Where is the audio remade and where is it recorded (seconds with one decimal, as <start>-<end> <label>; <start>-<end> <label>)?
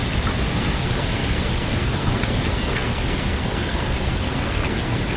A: 0.0-0.5 recorded; 0.5-5.2 remade